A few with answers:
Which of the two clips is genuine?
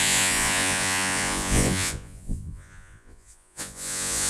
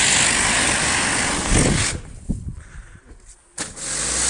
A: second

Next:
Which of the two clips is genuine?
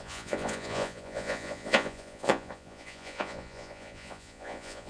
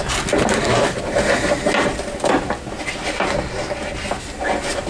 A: second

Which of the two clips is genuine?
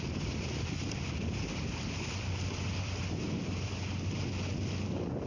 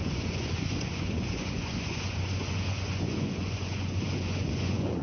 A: first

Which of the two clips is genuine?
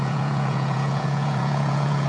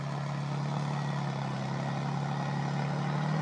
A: second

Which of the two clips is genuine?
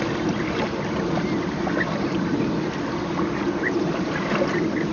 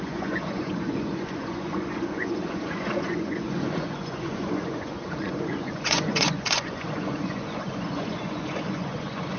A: first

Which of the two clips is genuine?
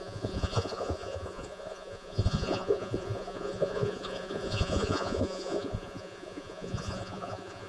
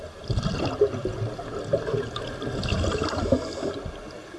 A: second